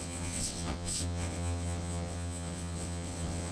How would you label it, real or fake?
fake